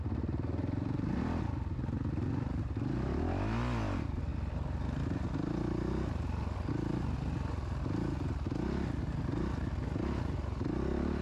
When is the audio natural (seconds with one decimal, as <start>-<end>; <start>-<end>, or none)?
0.0-11.2